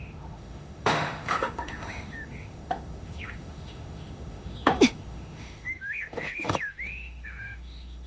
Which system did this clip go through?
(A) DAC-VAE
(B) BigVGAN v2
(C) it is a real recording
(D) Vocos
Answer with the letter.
A